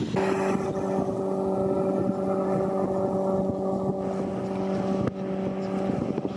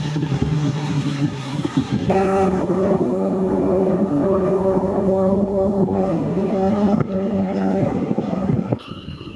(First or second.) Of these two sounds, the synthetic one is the second